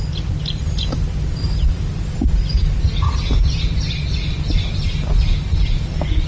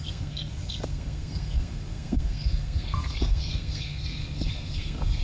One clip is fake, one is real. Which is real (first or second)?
first